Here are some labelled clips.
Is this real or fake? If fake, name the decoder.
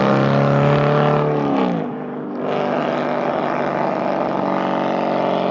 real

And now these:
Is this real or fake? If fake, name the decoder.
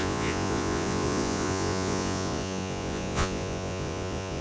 fake, vocoder, Vocos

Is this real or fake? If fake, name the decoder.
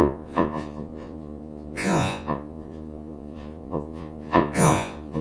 fake, vocoder, Vocos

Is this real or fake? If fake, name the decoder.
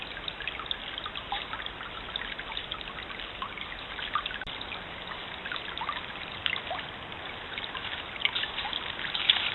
real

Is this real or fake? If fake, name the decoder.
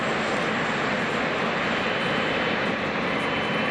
real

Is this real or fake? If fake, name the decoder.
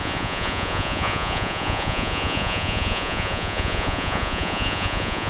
fake, vocoder, Vocos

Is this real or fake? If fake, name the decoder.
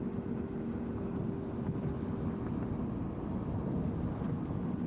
real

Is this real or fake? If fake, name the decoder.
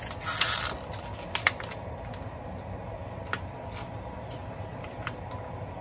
real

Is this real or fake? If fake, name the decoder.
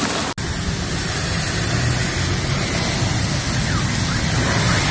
real